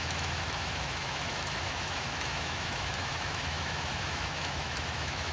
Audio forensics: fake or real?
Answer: fake